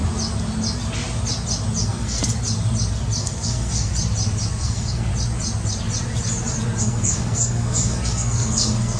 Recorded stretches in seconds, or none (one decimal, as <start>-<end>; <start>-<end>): 0.0-1.8; 2.2-3.2; 3.9-4.5; 5.1-6.8